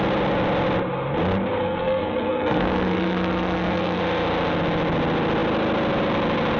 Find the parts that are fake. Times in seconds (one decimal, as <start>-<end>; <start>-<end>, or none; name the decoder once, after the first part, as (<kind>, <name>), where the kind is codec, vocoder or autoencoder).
1.6-4.0 (codec, SNAC)